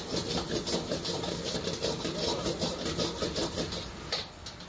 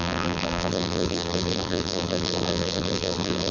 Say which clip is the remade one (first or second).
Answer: second